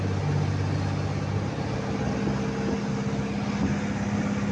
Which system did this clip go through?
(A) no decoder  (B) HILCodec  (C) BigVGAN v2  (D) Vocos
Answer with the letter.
A